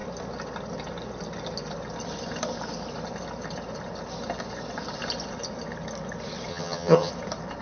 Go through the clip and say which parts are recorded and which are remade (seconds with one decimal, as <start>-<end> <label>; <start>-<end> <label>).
0.0-6.5 recorded; 6.5-7.1 remade; 7.1-7.6 recorded